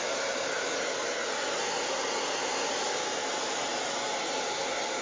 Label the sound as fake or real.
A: real